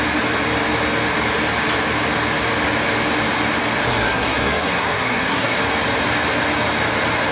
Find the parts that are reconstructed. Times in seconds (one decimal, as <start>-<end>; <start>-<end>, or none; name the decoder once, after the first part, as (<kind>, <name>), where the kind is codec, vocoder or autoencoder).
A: 3.9-5.6 (codec, SNAC)